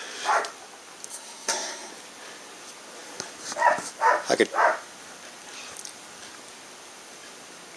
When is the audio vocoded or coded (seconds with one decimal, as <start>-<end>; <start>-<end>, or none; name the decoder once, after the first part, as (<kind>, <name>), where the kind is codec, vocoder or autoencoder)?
1.1-1.9 (codec, SNAC)

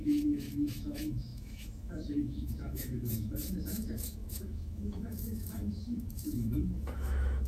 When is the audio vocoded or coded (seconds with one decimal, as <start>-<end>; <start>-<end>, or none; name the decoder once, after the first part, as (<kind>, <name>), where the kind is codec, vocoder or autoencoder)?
0.0-7.5 (autoencoder, DAC-VAE)